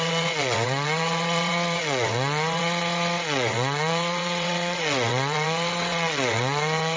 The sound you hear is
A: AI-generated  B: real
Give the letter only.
A